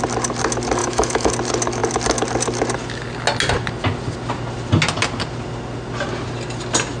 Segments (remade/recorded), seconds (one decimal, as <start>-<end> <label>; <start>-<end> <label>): 0.0-0.8 recorded; 0.8-1.3 remade; 1.3-7.0 recorded